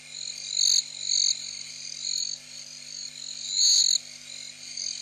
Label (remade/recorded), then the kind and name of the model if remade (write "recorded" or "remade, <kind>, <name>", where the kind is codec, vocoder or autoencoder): recorded